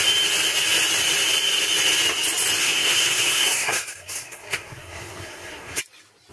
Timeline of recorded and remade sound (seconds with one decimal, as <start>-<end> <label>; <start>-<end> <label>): 0.0-2.6 recorded; 2.6-5.8 remade; 5.8-6.3 recorded